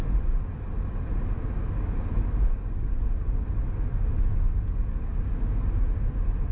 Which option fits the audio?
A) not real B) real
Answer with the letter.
B